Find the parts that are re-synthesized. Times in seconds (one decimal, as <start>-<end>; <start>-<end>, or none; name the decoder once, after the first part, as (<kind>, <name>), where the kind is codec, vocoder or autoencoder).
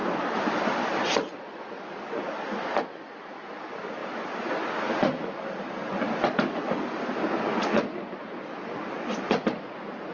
0.0-0.5 (vocoder, BigVGAN v2); 4.0-4.5